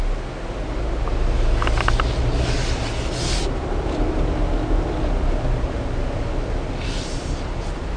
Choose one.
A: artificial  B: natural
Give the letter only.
B